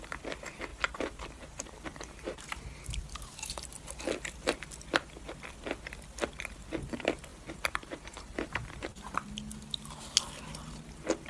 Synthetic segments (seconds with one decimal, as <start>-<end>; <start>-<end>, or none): 0.7-3.0; 7.3-9.3